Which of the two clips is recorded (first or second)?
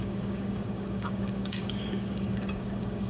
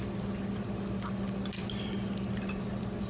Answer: second